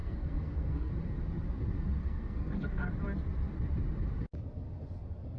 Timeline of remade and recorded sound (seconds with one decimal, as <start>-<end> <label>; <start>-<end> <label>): 0.0-0.9 remade; 0.9-2.0 recorded; 2.0-2.9 remade; 2.9-5.4 recorded